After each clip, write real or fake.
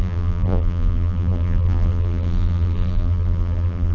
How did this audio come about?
fake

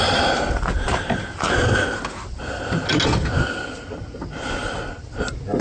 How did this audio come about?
real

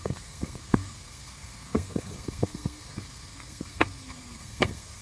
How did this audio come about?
fake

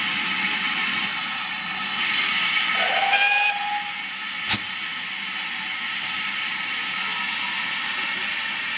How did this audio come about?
real